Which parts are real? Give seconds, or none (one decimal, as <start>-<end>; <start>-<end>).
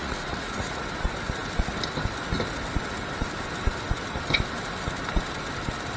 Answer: 0.8-6.0